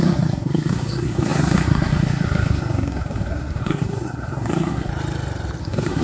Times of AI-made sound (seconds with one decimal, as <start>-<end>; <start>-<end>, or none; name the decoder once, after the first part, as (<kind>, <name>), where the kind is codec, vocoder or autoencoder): 0.0-4.9 (codec, SNAC); 5.6-6.0